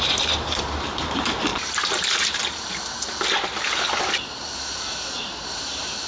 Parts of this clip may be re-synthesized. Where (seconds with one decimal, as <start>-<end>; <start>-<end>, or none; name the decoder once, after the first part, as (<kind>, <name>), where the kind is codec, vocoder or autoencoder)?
0.0-1.5 (vocoder, BigVGAN v2); 5.2-6.1